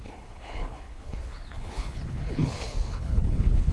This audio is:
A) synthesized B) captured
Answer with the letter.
A